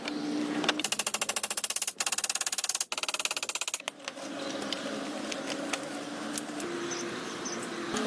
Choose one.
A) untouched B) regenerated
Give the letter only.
A